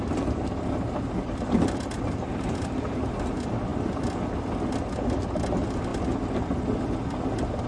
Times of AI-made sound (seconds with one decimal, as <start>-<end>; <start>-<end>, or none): 2.2-3.1